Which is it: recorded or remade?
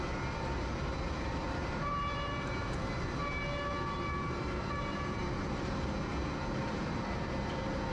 remade